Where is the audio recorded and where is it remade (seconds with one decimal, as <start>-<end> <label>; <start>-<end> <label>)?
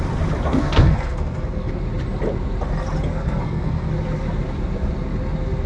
0.0-0.5 recorded; 0.5-1.7 remade; 1.7-3.1 recorded; 3.1-3.9 remade; 3.9-5.7 recorded